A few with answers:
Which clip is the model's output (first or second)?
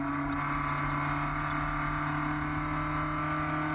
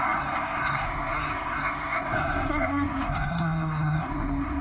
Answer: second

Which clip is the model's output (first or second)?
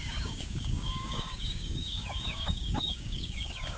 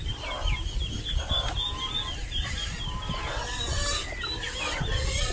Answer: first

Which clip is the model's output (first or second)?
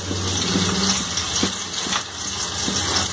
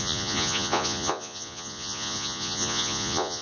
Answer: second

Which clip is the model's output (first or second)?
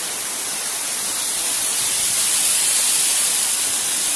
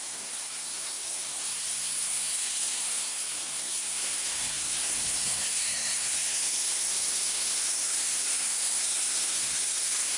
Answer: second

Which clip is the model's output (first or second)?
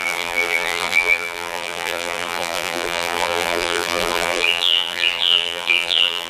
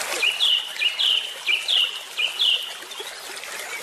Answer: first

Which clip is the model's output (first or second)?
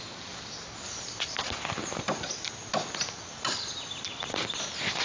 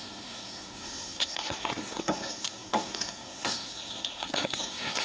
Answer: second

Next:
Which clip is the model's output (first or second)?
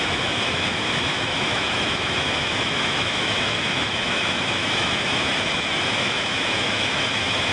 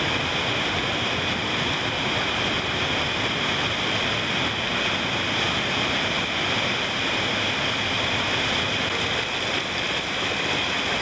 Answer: first